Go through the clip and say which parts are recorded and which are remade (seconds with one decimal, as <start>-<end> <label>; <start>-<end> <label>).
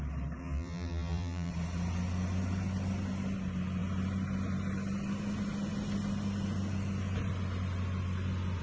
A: 0.0-0.4 recorded; 0.4-1.5 remade; 1.5-8.6 recorded